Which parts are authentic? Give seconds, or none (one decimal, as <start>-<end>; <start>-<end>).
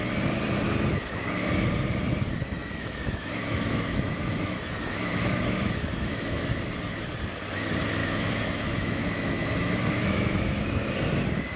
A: 0.0-2.6; 6.5-8.0; 10.9-11.6